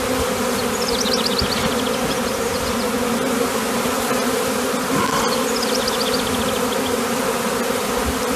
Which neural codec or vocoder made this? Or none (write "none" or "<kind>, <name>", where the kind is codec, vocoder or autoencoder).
none